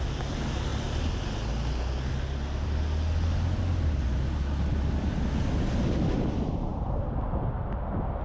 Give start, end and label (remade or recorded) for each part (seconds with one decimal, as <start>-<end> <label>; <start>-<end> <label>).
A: 0.0-8.2 recorded